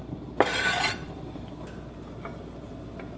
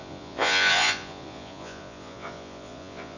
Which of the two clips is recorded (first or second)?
first